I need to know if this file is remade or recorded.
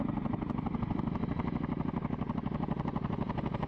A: recorded